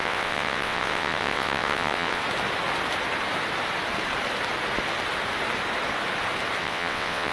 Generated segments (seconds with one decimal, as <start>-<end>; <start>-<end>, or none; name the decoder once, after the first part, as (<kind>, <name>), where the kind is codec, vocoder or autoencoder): 0.0-2.2 (vocoder, WaveNeXt); 6.6-7.3